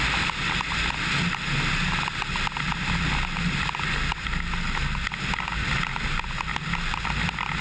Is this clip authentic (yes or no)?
yes